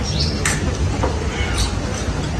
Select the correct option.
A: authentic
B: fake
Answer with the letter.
A